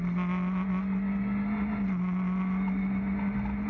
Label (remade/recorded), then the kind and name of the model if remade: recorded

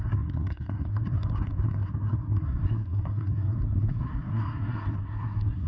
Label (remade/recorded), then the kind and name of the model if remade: remade, codec, SNAC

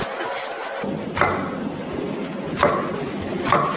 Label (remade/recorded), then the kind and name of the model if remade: recorded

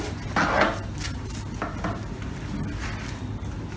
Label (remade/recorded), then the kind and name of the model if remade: recorded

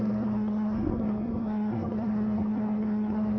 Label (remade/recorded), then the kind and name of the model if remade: remade, codec, SNAC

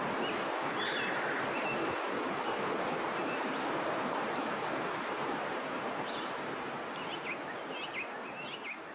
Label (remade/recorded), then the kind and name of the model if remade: recorded